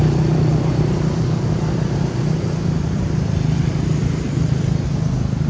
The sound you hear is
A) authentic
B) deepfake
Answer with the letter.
B